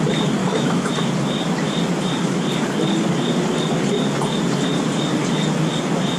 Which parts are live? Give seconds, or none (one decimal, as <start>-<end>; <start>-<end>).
0.0-0.4; 0.9-6.2